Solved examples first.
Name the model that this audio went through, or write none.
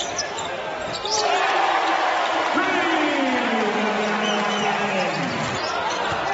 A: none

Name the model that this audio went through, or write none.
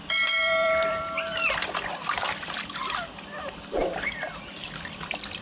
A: vocoder, BigVGAN v2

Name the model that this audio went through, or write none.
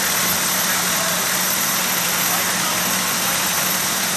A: vocoder, BigVGAN v2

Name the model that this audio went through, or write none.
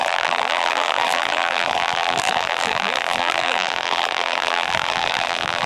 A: vocoder, BigVGAN v2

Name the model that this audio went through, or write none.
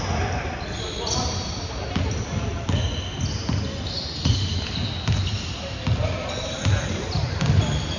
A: none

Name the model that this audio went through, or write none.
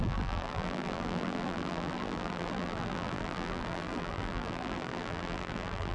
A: vocoder, BigVGAN v2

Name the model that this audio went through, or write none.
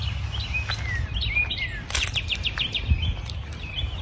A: none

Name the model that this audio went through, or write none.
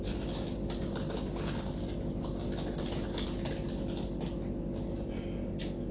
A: none